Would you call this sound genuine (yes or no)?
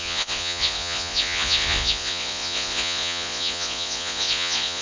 no